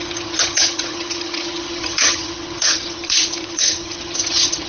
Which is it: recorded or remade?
remade